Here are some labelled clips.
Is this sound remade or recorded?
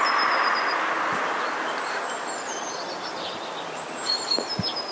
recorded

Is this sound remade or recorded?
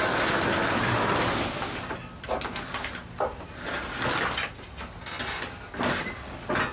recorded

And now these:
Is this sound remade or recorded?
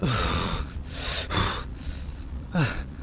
remade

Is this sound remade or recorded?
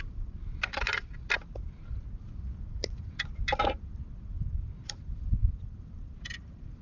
remade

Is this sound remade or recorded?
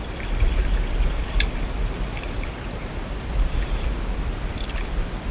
recorded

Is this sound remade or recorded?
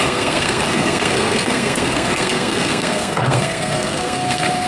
remade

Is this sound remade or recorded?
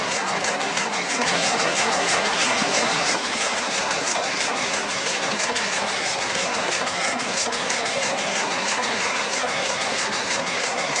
remade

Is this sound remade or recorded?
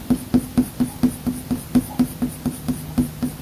recorded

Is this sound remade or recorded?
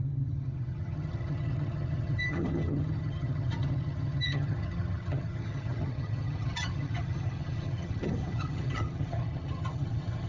remade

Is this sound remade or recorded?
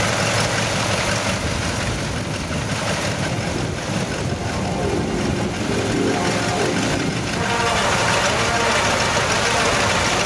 recorded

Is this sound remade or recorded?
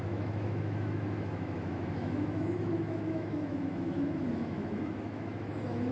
remade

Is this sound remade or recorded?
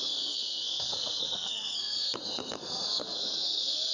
remade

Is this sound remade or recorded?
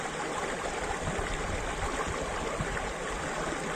recorded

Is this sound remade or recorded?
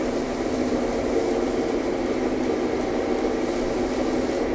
recorded